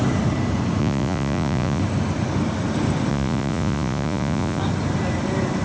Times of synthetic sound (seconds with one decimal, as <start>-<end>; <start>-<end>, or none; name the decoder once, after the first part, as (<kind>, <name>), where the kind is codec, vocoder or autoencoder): 0.8-1.8 (vocoder, Vocos); 3.1-4.6